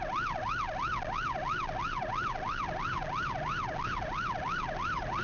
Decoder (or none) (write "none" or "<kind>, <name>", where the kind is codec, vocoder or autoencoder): none